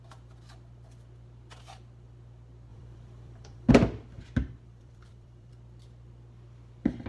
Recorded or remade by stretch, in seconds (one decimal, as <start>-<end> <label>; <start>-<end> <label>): 0.0-2.7 recorded; 2.7-3.7 remade; 3.7-4.4 recorded; 4.4-5.5 remade; 5.5-7.1 recorded